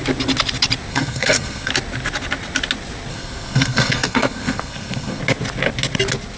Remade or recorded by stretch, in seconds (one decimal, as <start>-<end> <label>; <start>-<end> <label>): 0.0-0.9 recorded; 0.9-1.7 remade; 1.7-3.1 recorded; 3.1-5.2 remade; 5.2-6.4 recorded